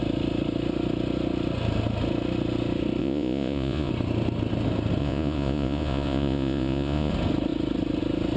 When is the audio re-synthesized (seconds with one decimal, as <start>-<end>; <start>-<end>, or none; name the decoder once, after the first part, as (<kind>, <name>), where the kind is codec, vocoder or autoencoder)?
3.0-3.9 (vocoder, Vocos); 5.0-7.1